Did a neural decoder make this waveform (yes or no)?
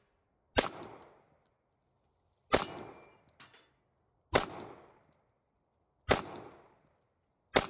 no